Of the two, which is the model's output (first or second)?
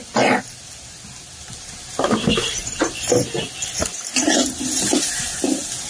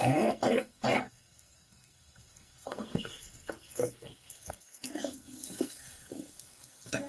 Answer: second